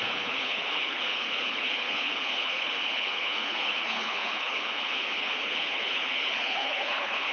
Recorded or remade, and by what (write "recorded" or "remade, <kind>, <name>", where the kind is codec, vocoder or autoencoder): remade, codec, HILCodec